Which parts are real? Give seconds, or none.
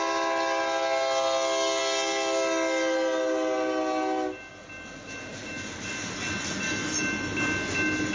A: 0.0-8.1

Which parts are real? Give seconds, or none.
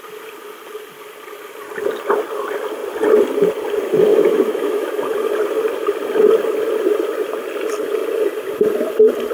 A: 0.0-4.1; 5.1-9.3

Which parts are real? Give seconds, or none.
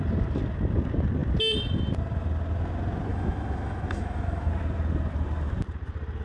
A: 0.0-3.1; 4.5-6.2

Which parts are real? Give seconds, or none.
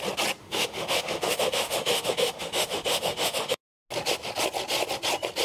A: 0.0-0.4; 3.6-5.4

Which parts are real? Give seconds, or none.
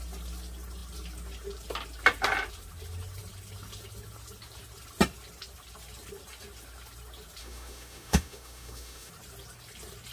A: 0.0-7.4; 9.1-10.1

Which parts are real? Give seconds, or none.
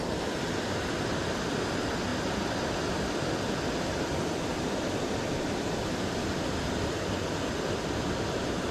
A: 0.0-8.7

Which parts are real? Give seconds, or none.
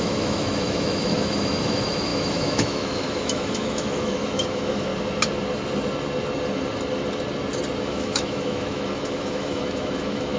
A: 4.9-7.8